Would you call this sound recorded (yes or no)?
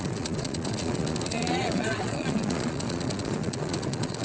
no